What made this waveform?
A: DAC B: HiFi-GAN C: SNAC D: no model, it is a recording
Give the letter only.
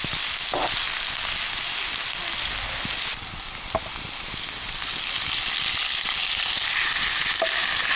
D